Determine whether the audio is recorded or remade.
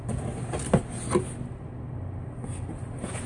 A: recorded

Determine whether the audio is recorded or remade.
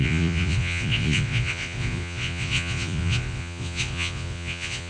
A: remade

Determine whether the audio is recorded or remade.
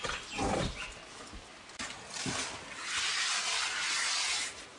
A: recorded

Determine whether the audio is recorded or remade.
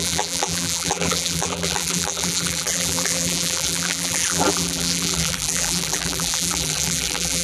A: remade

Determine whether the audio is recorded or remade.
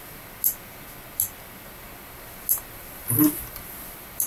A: recorded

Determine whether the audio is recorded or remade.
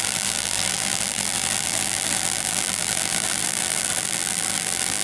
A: remade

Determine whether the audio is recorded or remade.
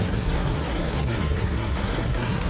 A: remade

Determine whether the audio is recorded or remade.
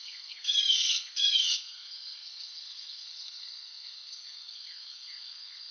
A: remade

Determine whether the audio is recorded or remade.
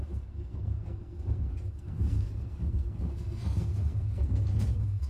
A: remade